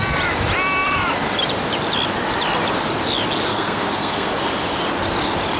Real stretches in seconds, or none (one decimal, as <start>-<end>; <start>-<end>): 0.0-3.5; 4.3-5.6

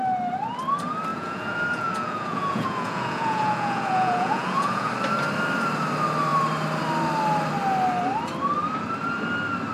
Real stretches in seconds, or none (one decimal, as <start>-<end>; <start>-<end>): 0.0-1.1; 4.9-9.7

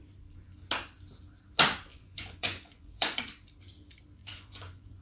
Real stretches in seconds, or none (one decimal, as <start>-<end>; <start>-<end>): 0.0-1.9; 3.2-4.2